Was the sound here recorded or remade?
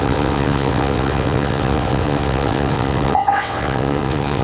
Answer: remade